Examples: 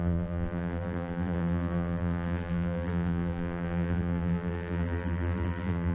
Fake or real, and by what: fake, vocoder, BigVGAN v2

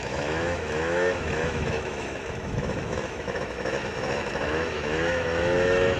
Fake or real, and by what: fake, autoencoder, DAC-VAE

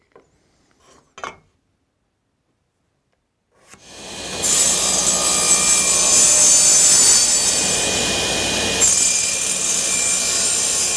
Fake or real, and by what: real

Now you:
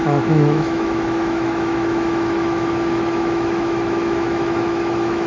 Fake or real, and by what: fake, autoencoder, DAC-VAE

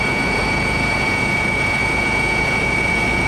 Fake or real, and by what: fake, vocoder, Vocos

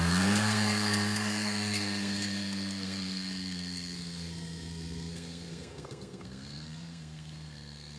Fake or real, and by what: fake, codec, SNAC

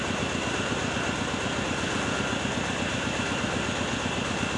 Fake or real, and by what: real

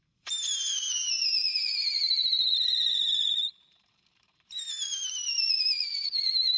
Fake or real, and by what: fake, vocoder, BigVGAN v2